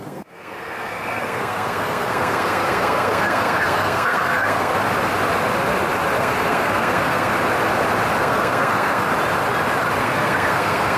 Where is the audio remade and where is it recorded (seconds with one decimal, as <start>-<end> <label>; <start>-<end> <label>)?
0.0-4.7 remade; 4.7-6.2 recorded; 6.2-7.3 remade; 7.3-8.2 recorded; 8.2-9.1 remade; 9.1-10.0 recorded; 10.0-11.0 remade